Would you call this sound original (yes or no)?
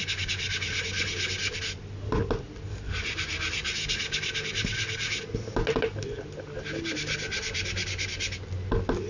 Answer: yes